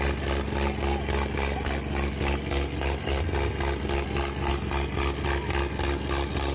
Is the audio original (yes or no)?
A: yes